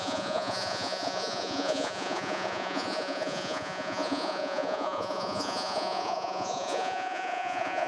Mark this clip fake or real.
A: fake